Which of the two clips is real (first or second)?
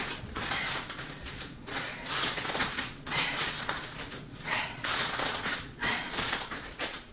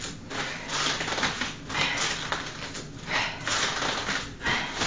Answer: second